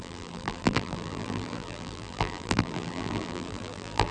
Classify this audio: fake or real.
fake